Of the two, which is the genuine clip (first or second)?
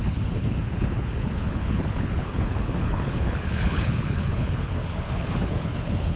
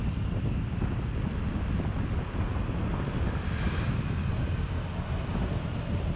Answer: second